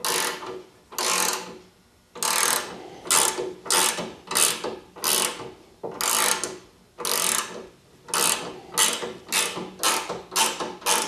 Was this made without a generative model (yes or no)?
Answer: yes